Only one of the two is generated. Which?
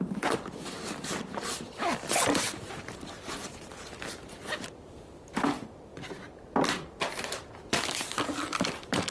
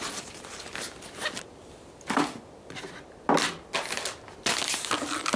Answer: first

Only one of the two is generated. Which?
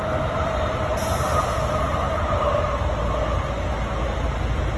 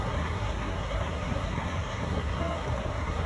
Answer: second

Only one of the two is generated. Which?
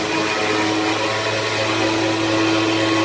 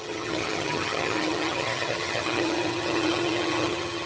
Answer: second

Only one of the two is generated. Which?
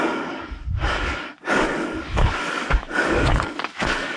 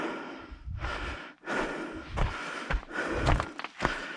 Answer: first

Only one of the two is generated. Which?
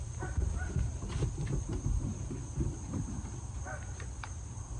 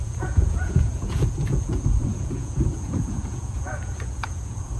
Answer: second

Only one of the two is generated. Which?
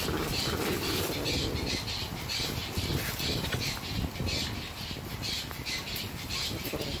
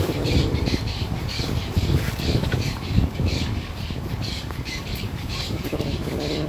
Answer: second